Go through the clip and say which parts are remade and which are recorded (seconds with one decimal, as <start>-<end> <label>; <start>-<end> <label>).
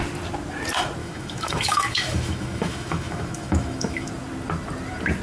0.0-1.0 recorded; 1.0-4.1 remade; 4.1-5.2 recorded